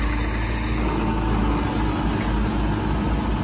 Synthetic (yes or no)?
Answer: no